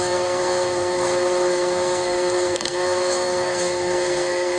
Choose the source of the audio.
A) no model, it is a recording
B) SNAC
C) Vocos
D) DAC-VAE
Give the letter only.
B